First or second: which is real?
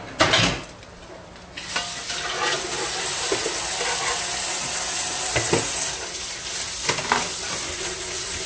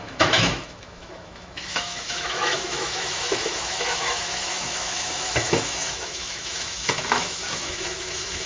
first